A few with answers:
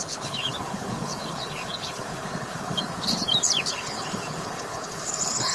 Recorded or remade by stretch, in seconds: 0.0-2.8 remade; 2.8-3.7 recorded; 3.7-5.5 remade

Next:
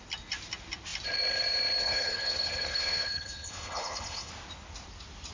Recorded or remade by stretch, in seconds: 0.0-1.8 recorded; 1.8-4.3 remade; 4.3-5.3 recorded

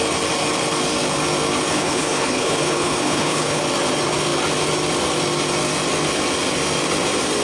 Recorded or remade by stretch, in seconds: 0.0-1.7 recorded; 1.7-3.6 remade; 3.6-7.4 recorded

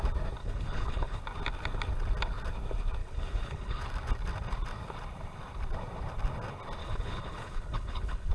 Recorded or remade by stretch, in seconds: 0.0-0.4 recorded; 0.4-1.2 remade; 1.2-3.0 recorded; 3.0-3.8 remade; 3.8-6.8 recorded; 6.8-8.3 remade

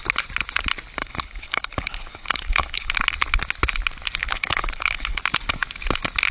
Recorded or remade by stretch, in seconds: 0.0-1.0 recorded; 1.0-2.9 remade; 2.9-4.2 recorded; 4.2-5.2 remade; 5.2-6.3 recorded

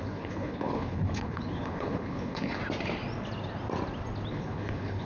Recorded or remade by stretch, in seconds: 0.0-2.6 remade; 2.6-4.3 recorded; 4.3-5.0 remade